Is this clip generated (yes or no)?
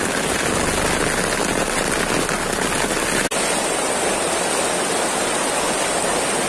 no